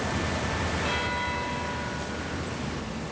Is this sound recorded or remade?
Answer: recorded